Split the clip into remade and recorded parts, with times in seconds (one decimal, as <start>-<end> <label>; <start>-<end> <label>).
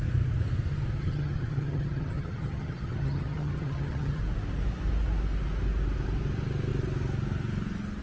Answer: 0.0-1.0 recorded; 1.0-4.2 remade; 4.2-8.0 recorded